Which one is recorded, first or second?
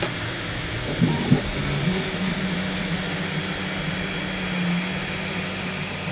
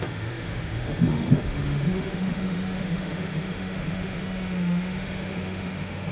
first